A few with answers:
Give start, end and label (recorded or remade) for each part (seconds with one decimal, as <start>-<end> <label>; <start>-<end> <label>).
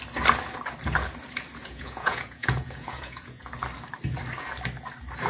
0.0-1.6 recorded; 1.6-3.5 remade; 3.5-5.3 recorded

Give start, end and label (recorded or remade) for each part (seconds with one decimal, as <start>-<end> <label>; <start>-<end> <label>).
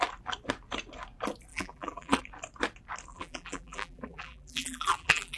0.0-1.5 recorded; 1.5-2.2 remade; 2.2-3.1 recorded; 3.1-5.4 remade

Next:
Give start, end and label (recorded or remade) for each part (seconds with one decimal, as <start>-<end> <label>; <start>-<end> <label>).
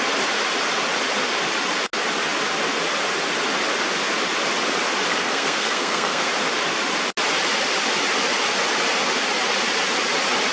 0.0-5.1 recorded; 5.1-6.3 remade; 6.3-10.5 recorded